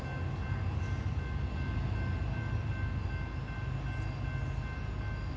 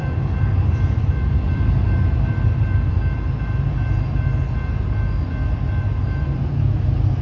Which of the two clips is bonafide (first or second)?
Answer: first